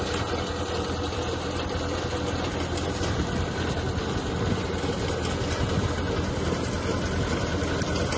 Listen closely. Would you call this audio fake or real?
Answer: real